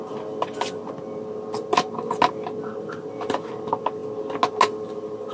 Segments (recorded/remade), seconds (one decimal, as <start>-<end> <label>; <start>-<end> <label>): 0.0-5.3 recorded